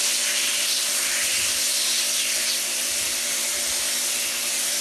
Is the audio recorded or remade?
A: recorded